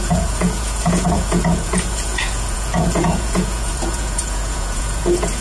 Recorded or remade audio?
remade